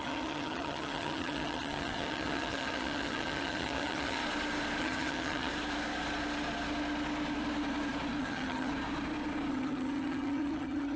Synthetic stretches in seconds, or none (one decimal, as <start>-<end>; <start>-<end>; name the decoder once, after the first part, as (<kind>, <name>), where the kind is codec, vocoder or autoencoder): 0.0-4.2 (vocoder, HiFi-GAN); 4.8-5.5; 8.2-8.7; 9.5-11.0